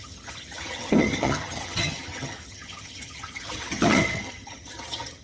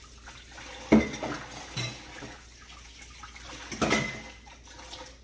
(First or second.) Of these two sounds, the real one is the second